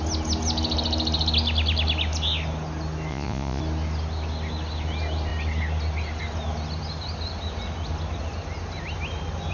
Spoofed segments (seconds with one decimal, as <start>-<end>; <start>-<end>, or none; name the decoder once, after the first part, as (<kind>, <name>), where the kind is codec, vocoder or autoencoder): 3.1-3.6 (vocoder, Vocos)